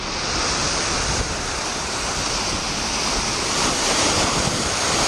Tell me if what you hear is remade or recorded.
recorded